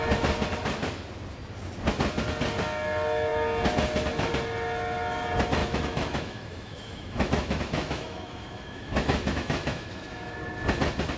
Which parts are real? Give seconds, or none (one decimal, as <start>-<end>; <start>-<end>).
0.0-5.6; 10.3-11.2